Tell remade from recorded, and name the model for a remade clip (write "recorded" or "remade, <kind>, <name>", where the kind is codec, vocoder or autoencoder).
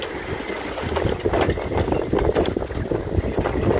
recorded